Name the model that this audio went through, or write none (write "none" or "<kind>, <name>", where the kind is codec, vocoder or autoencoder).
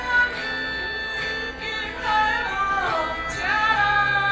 none